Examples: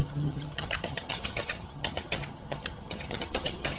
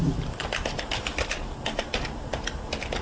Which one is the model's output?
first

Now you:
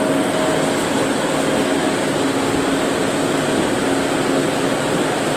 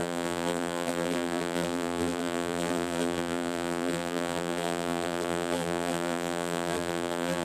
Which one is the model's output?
second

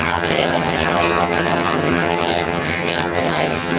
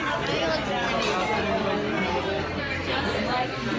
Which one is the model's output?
first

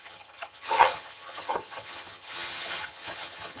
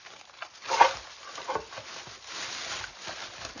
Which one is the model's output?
first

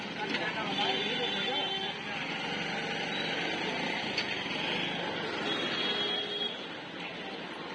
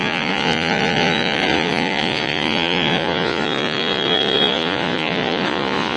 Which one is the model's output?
second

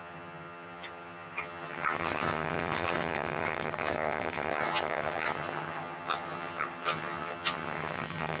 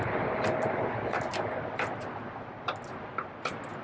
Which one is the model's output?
first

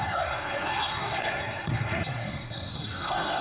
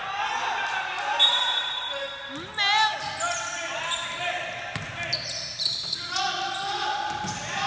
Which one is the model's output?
first